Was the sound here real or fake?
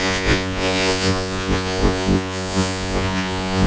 fake